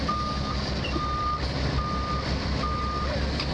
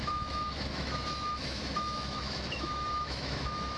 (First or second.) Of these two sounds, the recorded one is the first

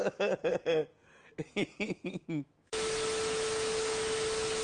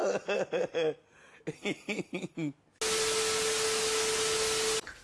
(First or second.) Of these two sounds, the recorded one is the second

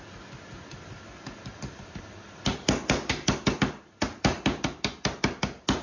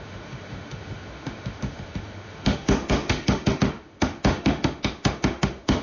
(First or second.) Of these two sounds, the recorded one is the first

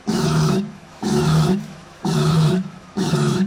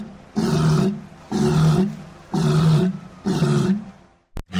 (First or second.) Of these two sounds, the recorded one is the second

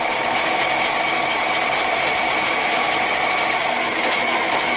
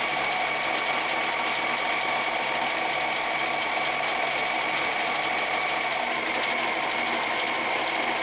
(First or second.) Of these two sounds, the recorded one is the second